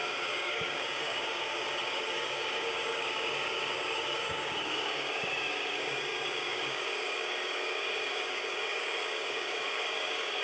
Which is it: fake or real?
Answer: fake